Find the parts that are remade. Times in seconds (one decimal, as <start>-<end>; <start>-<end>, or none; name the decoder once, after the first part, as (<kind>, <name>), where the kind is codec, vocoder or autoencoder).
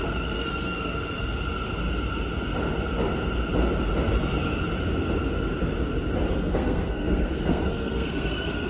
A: 0.0-1.3 (codec, SNAC); 6.3-8.7